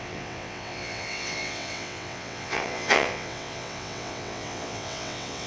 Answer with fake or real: fake